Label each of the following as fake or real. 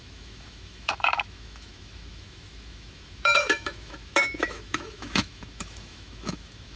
fake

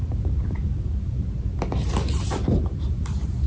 fake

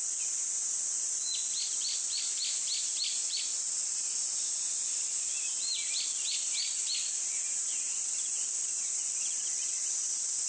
real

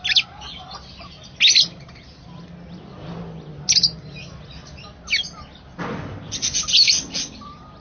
real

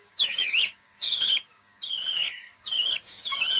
fake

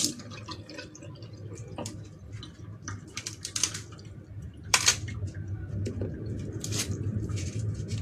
fake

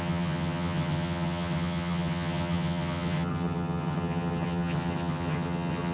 fake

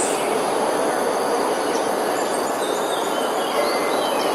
fake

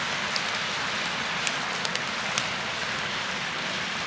real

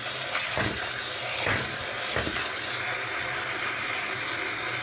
real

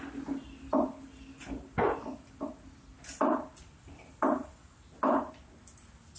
real